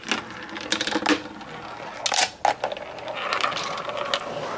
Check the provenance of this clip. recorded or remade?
recorded